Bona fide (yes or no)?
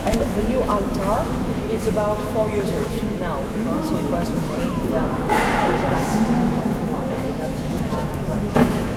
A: no